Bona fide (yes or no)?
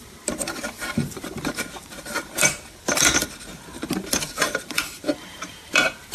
no